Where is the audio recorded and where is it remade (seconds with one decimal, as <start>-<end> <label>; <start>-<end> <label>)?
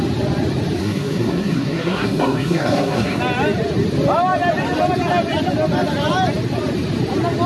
0.0-0.8 recorded; 0.8-3.2 remade; 3.2-7.5 recorded